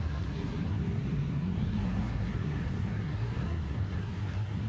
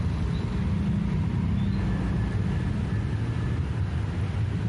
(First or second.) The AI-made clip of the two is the first